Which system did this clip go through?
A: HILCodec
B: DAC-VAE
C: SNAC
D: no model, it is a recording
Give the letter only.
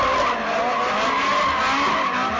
D